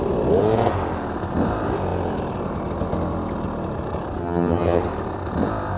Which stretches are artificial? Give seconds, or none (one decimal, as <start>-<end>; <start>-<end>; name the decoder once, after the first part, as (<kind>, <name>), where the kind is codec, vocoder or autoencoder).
4.2-4.8 (vocoder, HiFi-GAN)